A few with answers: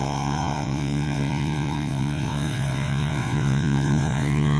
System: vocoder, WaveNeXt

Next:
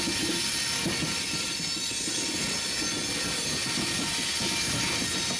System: none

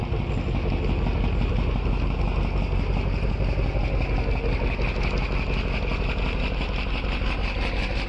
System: none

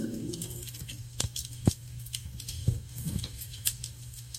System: codec, DAC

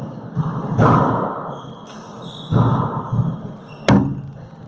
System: none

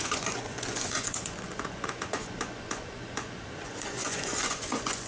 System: vocoder, Vocos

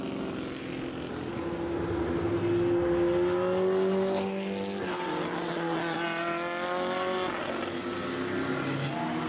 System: none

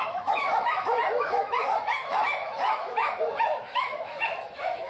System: autoencoder, DAC-VAE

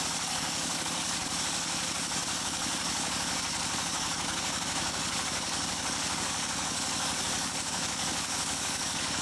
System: codec, DAC